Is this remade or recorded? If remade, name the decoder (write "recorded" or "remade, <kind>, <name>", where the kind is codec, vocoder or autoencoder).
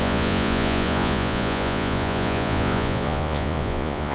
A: remade, vocoder, Vocos